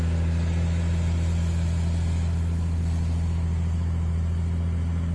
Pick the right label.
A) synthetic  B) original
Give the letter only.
B